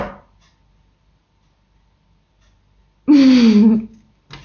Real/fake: real